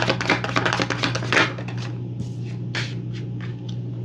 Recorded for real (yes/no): yes